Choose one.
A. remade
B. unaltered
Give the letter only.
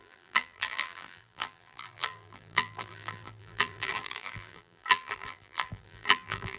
A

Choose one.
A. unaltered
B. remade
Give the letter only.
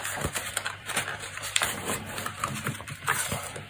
B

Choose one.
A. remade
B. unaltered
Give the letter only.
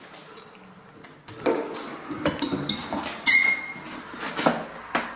B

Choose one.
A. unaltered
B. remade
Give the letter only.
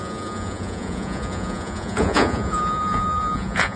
B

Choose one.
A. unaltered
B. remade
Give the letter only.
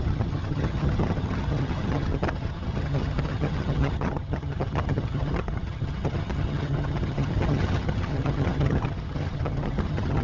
B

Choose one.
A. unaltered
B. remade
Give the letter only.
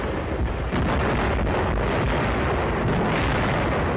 A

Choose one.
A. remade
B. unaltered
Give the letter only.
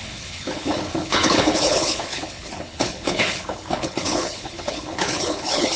A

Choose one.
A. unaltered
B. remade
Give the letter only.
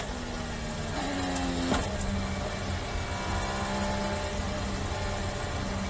A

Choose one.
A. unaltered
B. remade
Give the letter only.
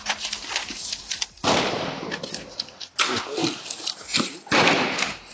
A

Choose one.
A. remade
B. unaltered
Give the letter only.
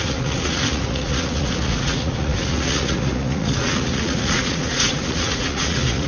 A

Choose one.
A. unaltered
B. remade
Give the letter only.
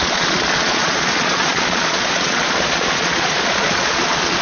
B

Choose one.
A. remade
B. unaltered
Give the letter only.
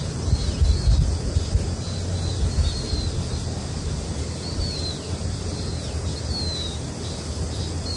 B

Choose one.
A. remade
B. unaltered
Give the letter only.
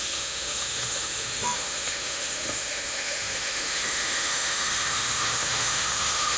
A